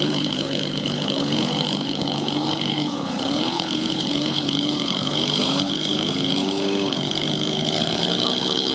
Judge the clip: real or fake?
fake